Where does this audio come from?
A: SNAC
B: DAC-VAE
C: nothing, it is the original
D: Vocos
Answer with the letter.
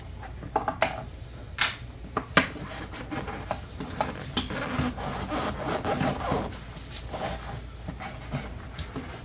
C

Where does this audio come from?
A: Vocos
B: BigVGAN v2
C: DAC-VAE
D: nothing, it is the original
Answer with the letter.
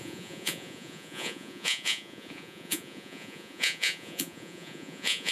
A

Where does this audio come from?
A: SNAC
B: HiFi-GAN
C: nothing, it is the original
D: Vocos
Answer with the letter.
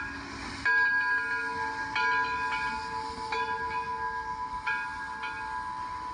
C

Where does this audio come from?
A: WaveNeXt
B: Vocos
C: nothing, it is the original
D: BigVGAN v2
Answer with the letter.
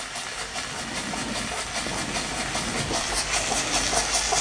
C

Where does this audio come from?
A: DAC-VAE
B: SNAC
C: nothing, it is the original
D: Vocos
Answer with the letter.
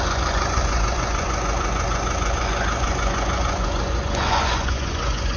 D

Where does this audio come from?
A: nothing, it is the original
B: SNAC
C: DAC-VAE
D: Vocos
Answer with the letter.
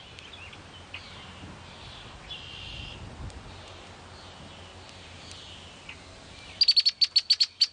A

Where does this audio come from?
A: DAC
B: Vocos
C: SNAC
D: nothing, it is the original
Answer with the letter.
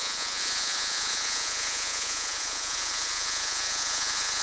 B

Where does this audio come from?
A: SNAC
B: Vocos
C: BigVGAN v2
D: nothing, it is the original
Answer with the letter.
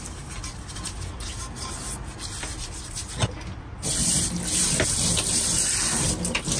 D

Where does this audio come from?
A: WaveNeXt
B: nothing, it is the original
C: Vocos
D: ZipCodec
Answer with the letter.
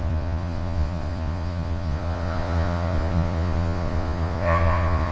C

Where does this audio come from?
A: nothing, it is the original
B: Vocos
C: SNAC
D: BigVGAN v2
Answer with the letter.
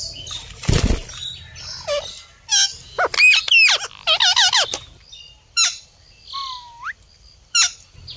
A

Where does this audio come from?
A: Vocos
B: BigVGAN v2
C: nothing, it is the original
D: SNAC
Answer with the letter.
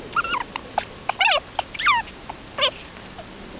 C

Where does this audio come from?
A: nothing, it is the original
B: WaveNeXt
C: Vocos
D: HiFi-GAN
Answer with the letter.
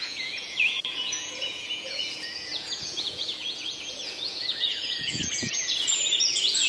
C